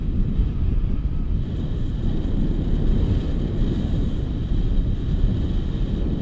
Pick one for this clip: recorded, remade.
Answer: recorded